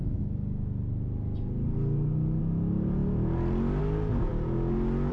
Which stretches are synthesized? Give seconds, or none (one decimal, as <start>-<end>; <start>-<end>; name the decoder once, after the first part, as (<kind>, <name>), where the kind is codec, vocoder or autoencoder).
none